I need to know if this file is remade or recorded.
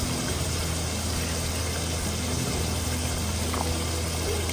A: recorded